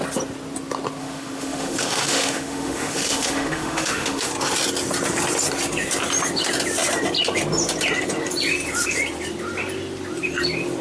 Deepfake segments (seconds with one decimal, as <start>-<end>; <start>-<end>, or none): 1.0-4.3